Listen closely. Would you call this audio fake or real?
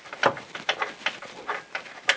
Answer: real